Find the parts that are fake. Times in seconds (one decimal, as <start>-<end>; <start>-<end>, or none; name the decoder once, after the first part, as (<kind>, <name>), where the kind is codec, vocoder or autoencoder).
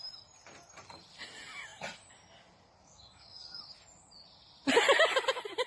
2.8-3.6 (codec, DAC)